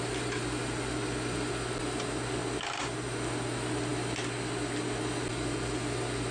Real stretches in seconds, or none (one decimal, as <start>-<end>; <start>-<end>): 0.0-6.3